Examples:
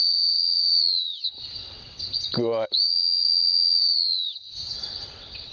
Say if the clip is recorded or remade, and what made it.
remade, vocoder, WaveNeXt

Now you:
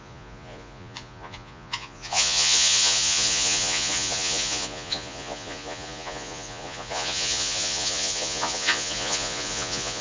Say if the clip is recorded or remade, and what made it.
remade, vocoder, Vocos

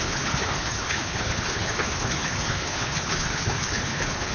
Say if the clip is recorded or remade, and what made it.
remade, codec, HILCodec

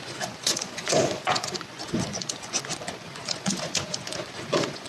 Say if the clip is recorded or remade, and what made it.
remade, vocoder, Vocos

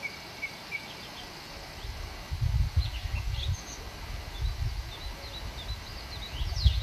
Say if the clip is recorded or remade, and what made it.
recorded